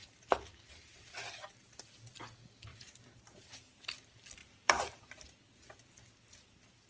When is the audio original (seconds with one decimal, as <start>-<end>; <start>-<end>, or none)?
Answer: 0.0-2.7; 3.8-4.4; 5.8-6.9